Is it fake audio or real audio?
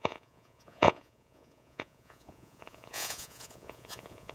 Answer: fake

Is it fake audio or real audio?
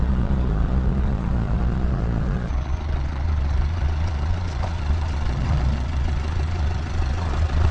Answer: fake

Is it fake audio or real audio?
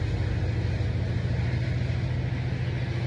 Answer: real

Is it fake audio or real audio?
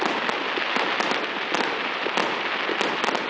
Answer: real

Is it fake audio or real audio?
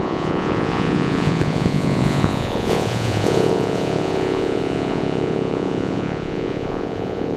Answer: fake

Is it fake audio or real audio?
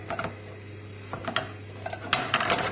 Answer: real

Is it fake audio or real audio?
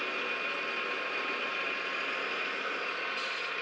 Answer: real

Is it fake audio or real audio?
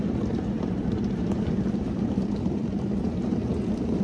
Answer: fake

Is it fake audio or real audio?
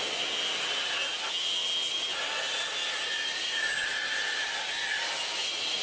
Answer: real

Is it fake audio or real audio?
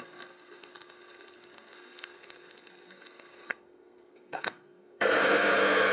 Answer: fake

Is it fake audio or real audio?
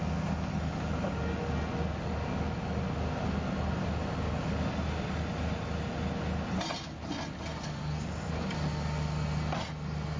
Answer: real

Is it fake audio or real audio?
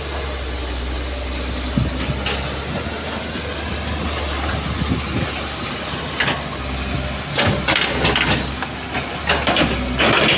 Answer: real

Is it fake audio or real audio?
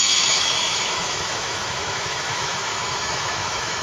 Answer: fake